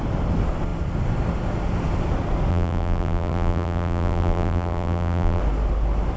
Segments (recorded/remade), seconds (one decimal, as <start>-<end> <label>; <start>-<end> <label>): 0.0-2.5 recorded; 2.5-5.4 remade; 5.4-6.2 recorded